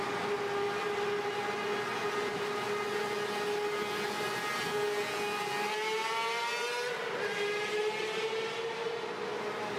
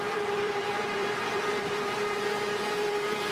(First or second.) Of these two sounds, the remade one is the second